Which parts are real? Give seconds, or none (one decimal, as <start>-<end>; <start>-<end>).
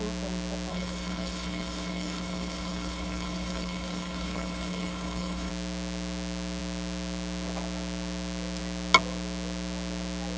0.0-0.7; 5.5-10.4